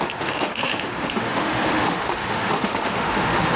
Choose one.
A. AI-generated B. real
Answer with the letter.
A